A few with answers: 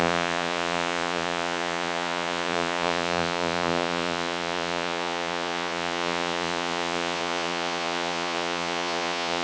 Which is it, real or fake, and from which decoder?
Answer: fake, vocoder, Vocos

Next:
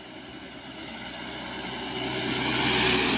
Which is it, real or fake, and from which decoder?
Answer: real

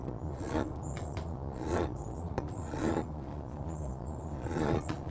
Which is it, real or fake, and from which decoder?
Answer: fake, vocoder, Vocos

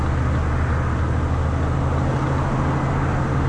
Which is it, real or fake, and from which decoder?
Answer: real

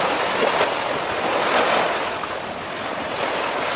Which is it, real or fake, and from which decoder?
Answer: real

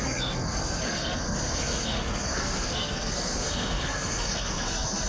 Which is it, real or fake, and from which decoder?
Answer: fake, codec, SNAC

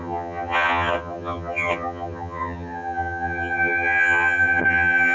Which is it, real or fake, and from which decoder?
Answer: fake, vocoder, HiFi-GAN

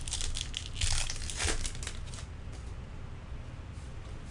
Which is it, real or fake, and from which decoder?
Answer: real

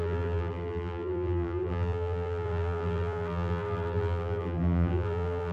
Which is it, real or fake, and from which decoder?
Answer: fake, vocoder, BigVGAN v2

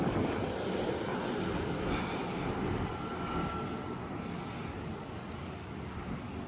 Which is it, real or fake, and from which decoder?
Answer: real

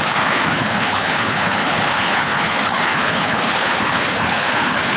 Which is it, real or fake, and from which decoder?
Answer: fake, codec, HILCodec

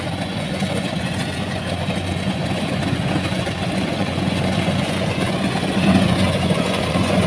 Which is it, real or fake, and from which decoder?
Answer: fake, vocoder, Vocos